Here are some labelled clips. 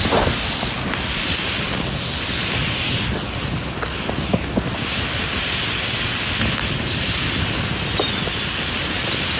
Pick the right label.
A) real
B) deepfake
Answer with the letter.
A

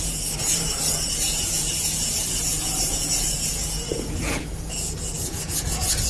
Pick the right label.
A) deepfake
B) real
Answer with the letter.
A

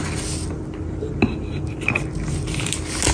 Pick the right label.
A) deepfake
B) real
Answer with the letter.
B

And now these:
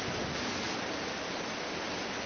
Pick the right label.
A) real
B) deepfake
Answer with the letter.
A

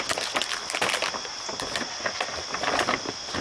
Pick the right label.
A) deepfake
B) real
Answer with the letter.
B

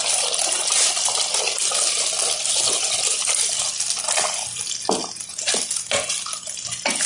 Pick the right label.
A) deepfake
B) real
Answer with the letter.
B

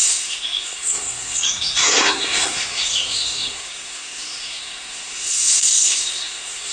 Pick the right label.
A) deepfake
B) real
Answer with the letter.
A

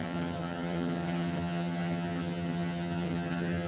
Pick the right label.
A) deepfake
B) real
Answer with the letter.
A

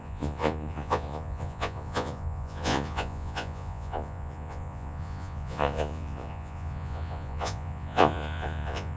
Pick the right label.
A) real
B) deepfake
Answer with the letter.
B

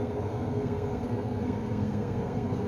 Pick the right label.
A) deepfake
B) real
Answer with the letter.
A